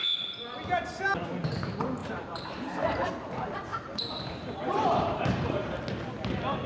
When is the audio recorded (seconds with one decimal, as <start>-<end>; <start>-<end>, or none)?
0.0-2.0; 3.1-3.7; 5.8-6.7